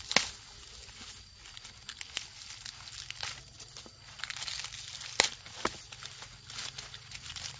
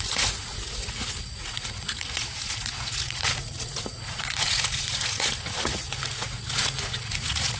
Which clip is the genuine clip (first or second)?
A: first